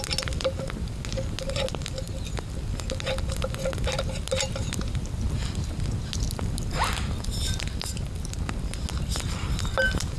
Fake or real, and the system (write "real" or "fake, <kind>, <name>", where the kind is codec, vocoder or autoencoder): real